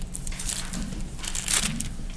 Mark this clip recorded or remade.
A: remade